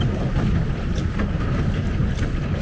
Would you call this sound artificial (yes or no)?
no